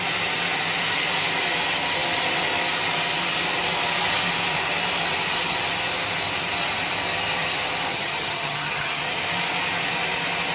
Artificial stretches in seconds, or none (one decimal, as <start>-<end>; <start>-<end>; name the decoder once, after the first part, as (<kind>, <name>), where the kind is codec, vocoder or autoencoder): 7.9-9.0 (vocoder, HiFi-GAN)